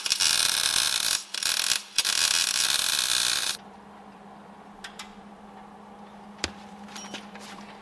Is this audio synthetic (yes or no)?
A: no